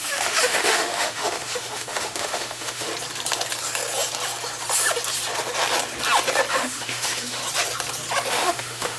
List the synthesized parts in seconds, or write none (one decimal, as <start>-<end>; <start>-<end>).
0.0-2.9; 6.5-7.4; 8.3-9.0